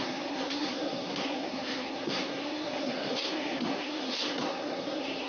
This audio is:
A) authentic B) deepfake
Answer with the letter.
B